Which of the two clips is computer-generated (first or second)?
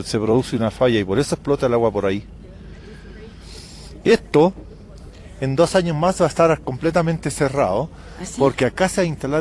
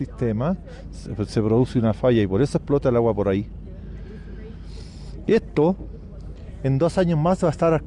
first